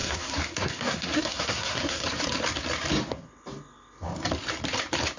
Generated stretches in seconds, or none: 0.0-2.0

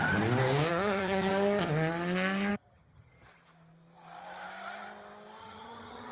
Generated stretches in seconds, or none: 0.7-1.3; 2.5-3.1; 5.4-6.1

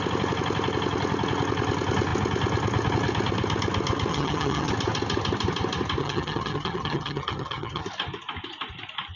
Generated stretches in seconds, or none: 4.1-4.7; 6.0-7.8

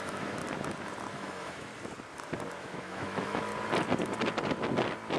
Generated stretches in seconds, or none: 0.0-0.4; 1.1-1.7; 2.6-3.5

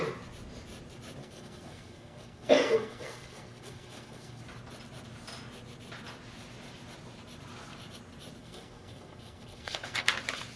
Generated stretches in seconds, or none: 1.2-4.4; 8.4-10.1

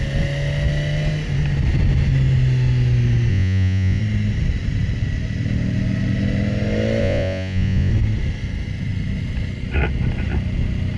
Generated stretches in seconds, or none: 3.3-4.0; 7.0-7.9

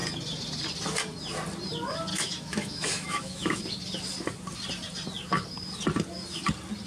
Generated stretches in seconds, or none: 2.1-3.6

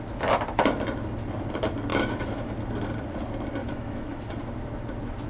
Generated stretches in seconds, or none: 1.9-2.5; 3.6-4.4